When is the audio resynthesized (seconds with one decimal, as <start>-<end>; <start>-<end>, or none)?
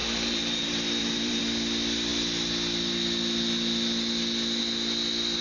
0.0-1.4